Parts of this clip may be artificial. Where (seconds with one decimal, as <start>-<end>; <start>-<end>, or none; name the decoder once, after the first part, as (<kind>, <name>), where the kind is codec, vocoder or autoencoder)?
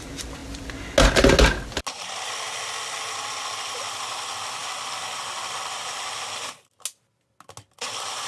none